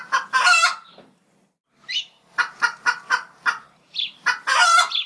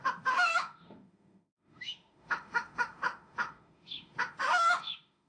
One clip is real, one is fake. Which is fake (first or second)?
second